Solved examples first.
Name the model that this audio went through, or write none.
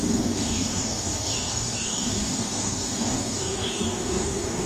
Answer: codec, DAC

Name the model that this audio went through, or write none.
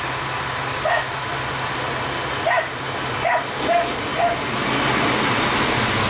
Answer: none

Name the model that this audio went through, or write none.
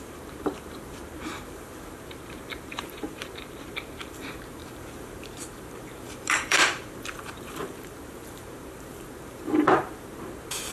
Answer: vocoder, BigVGAN v2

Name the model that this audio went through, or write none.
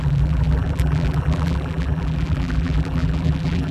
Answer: vocoder, BigVGAN v2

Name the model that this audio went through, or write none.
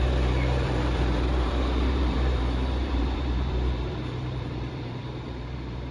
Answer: vocoder, BigVGAN v2